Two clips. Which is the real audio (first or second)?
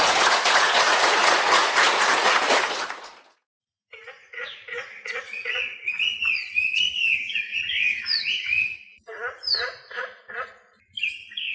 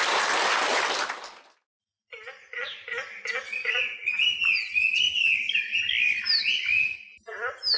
second